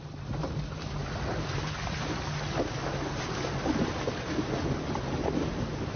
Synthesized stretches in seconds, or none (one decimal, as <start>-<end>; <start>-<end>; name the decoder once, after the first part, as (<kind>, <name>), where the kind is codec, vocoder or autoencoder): none